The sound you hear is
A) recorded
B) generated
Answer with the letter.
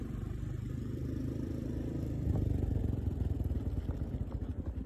B